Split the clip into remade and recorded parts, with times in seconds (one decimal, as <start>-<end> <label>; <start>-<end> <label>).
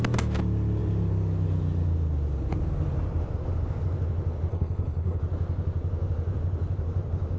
0.0-4.5 recorded; 4.5-5.2 remade; 5.2-7.4 recorded